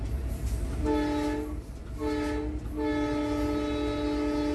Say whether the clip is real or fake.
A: real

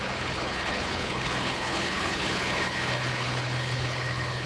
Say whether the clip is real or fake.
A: fake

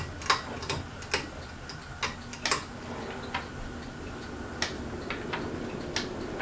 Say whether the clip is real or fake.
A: real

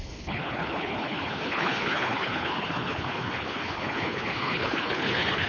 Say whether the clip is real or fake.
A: fake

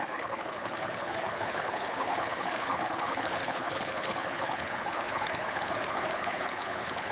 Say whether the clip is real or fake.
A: fake